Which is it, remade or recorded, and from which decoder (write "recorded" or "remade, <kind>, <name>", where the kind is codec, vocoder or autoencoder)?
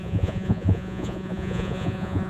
remade, vocoder, Vocos